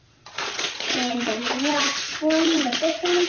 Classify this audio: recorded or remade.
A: remade